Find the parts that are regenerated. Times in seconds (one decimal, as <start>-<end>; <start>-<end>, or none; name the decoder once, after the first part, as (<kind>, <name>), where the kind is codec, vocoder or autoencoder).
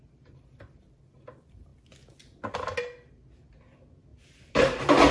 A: 0.0-1.7 (vocoder, BigVGAN v2); 3.1-5.1